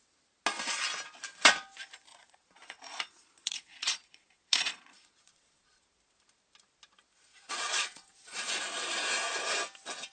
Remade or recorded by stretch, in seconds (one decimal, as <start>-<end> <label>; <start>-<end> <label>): 0.0-2.1 recorded; 2.1-6.0 remade; 6.0-7.3 recorded; 7.3-8.6 remade; 8.6-10.1 recorded